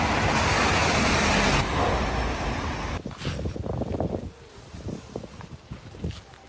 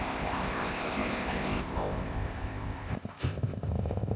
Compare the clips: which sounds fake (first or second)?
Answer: second